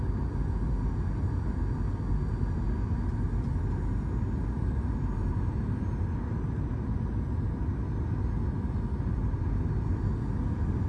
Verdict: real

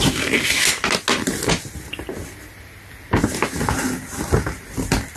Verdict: real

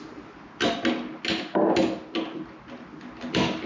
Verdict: real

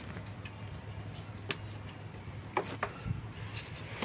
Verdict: real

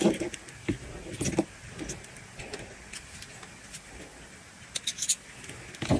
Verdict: real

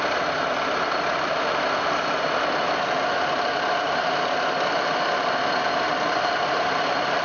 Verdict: real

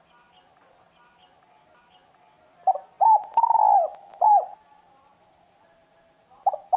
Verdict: real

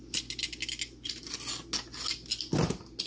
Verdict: real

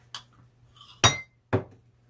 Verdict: real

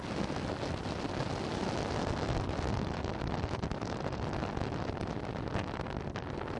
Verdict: real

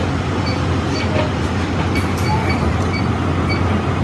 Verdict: real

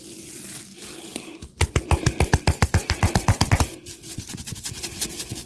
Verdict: real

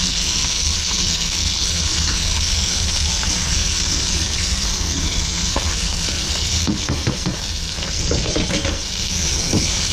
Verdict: fake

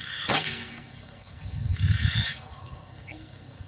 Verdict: fake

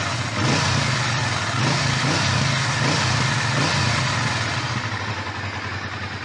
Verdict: real